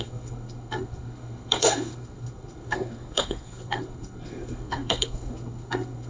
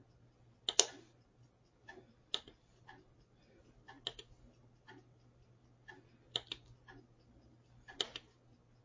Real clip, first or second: second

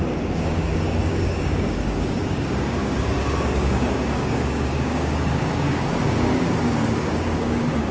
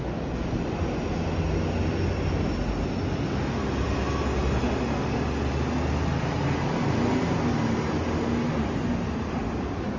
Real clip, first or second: second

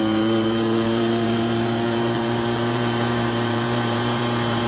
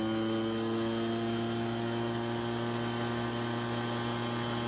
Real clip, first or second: second